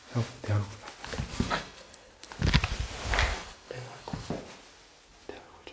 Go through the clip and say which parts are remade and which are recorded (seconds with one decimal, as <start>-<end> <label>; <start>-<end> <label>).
0.0-1.3 recorded; 1.3-2.1 remade; 2.1-3.3 recorded; 3.3-4.3 remade; 4.3-5.7 recorded

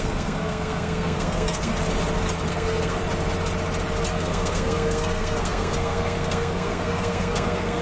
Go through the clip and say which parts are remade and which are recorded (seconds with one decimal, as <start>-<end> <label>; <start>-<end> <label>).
0.0-1.7 remade; 1.7-2.5 recorded; 2.5-3.0 remade; 3.0-4.1 recorded; 4.1-7.8 remade

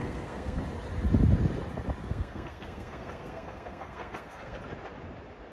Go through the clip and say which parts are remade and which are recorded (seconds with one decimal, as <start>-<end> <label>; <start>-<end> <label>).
0.0-0.6 remade; 0.6-2.0 recorded; 2.0-4.6 remade; 4.6-5.5 recorded

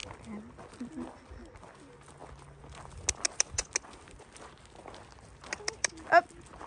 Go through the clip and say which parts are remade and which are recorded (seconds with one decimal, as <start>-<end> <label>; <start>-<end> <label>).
0.0-6.7 recorded